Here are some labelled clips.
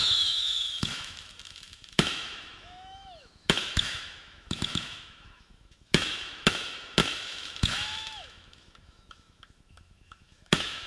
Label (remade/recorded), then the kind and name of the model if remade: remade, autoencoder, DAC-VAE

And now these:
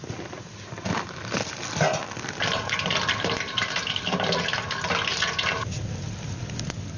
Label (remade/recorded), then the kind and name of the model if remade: recorded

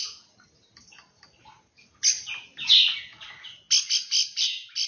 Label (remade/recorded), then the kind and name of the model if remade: recorded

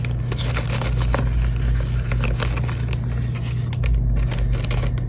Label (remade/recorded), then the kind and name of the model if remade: recorded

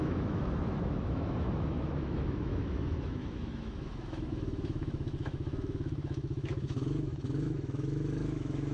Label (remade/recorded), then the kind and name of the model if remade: remade, autoencoder, DAC-VAE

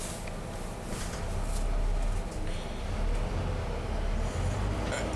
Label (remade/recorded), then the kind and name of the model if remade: recorded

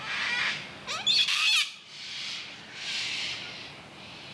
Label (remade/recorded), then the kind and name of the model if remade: recorded